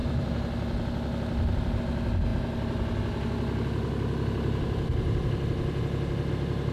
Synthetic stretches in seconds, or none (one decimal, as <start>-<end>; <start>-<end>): none